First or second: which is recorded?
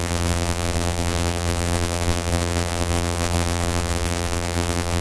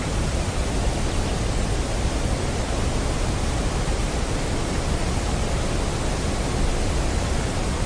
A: second